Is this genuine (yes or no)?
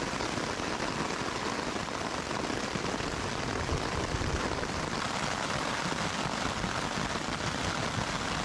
yes